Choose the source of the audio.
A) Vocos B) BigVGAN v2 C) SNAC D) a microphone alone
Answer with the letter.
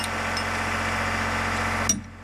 D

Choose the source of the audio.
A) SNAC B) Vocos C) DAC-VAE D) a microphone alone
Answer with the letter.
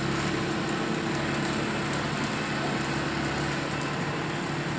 D